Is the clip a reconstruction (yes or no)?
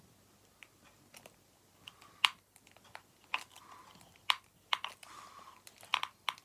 no